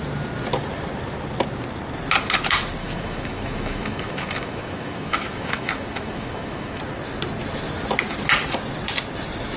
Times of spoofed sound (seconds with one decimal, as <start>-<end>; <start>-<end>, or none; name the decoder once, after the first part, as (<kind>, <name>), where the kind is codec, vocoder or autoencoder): 2.8-6.8 (autoencoder, DAC-VAE)